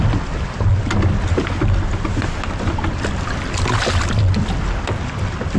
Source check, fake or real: real